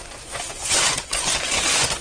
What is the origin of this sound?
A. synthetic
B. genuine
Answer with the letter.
A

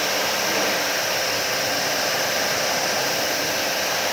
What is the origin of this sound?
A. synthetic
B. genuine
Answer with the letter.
B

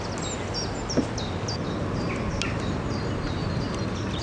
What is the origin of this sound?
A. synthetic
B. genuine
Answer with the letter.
B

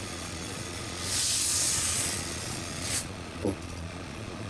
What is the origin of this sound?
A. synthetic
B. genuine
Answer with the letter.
A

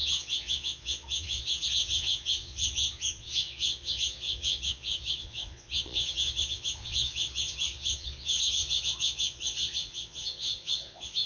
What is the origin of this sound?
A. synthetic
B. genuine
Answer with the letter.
A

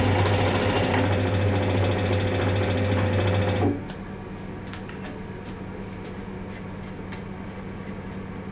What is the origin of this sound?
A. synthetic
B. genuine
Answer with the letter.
B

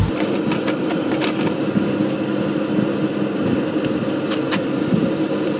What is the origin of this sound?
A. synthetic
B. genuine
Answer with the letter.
B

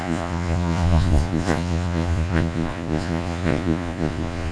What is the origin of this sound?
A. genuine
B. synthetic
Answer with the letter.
B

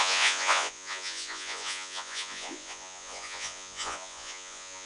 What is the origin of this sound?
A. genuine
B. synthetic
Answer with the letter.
B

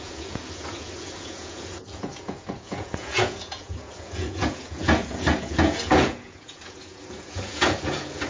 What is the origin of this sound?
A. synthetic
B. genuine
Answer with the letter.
A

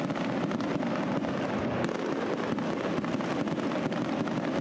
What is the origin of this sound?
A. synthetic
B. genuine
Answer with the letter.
B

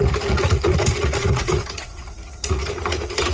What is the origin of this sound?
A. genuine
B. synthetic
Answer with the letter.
B